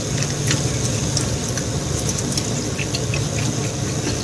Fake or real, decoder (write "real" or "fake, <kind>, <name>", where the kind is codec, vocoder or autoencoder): real